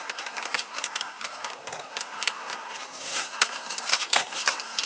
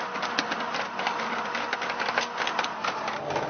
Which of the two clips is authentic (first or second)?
second